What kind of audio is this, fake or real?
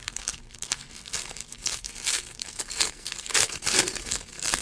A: fake